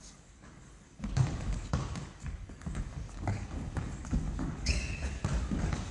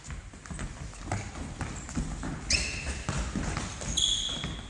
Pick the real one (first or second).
second